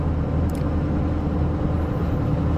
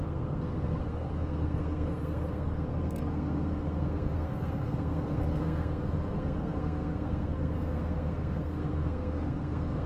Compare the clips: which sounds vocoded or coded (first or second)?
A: second